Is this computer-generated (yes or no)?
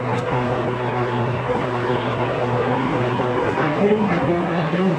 yes